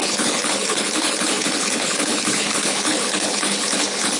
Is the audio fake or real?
fake